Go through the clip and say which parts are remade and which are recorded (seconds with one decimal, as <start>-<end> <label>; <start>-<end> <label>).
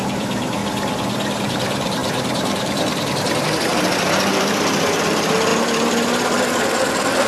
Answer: 0.0-0.6 remade; 0.6-1.4 recorded; 1.4-5.5 remade; 5.5-6.3 recorded; 6.3-7.3 remade